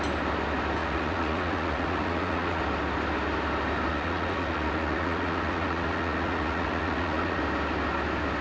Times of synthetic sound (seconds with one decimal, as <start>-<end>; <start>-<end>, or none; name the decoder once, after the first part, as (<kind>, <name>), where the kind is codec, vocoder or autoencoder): 0.8-2.6 (vocoder, Vocos); 3.9-7.4